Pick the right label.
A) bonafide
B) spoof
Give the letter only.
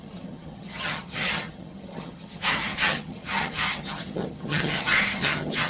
B